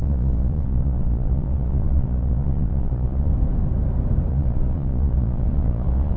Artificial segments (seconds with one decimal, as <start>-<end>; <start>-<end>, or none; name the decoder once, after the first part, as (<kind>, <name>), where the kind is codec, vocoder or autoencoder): 0.0-3.3 (vocoder, Vocos); 4.3-6.2